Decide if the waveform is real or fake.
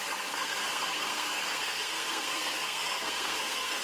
fake